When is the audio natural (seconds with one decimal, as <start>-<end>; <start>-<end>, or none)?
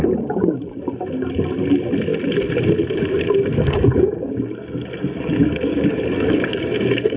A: 0.0-3.5